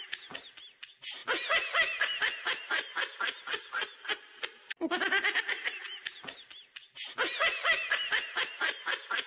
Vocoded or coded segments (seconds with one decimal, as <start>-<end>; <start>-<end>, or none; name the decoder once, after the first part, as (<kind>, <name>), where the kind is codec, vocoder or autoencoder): none